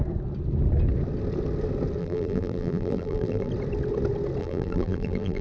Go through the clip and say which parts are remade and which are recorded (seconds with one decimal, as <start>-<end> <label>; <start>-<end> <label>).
0.0-2.0 recorded; 2.0-3.5 remade; 3.5-4.4 recorded; 4.4-5.4 remade